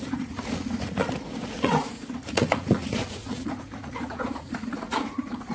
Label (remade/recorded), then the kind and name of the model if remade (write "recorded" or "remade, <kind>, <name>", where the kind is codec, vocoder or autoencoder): remade, vocoder, Vocos